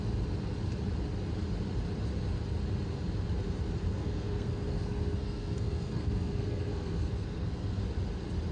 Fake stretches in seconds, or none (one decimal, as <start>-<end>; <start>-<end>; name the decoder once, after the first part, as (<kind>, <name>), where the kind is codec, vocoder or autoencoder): 3.9-7.8 (codec, SNAC)

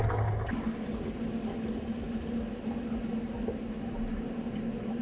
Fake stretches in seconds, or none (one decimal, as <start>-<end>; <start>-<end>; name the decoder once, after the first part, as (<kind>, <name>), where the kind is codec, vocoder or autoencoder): none

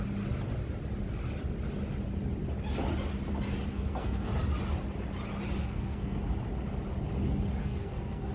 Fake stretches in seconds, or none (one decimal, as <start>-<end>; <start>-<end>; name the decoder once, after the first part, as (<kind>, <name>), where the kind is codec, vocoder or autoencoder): 3.7-4.3 (codec, SNAC); 5.6-6.2; 7.6-8.3